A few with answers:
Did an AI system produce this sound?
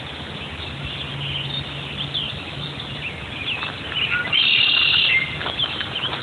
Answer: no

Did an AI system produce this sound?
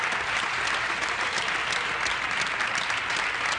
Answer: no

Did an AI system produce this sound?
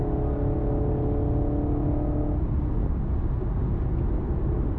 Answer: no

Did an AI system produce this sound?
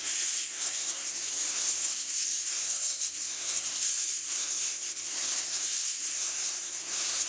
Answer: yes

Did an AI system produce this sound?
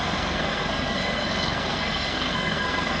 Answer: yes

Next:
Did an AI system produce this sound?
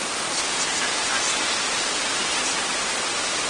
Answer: no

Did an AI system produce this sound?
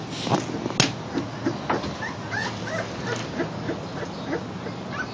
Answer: no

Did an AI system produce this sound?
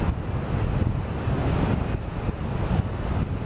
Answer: no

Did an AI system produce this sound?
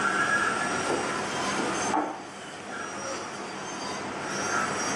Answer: no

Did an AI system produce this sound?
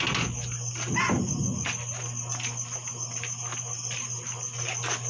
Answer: no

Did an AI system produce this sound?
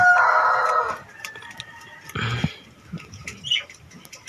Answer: no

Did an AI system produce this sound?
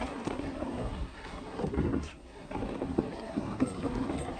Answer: yes